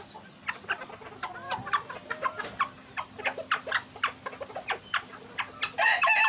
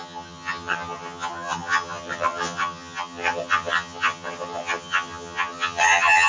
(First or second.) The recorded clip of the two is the first